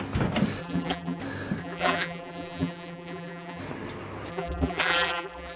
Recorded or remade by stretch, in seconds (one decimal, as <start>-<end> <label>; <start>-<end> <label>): 0.0-0.6 recorded; 0.6-1.2 remade; 1.2-1.6 recorded; 1.6-3.6 remade; 3.6-4.3 recorded; 4.3-5.6 remade